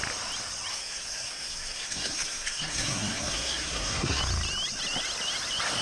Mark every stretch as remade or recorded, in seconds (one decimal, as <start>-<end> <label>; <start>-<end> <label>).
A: 0.0-0.7 recorded; 0.7-4.2 remade; 4.2-5.8 recorded